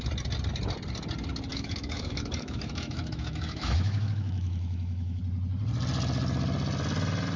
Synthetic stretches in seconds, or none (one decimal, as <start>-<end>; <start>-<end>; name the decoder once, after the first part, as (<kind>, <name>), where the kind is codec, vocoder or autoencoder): 1.5-5.2 (autoencoder, DAC-VAE)